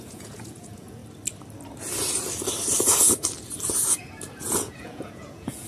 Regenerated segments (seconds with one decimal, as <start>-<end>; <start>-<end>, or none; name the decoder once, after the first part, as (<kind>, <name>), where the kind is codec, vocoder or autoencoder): 0.0-1.0 (vocoder, Vocos); 4.4-5.7